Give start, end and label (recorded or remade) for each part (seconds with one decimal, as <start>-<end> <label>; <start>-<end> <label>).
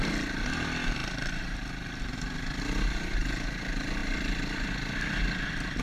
0.0-4.0 recorded; 4.0-5.2 remade; 5.2-5.8 recorded